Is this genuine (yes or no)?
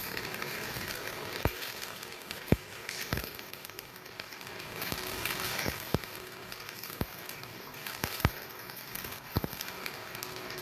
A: no